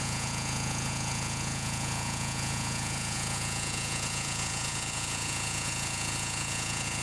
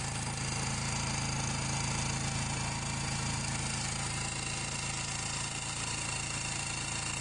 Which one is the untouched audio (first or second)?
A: second